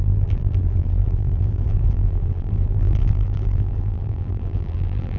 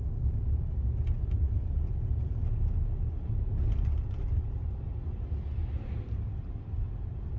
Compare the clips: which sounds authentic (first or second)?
second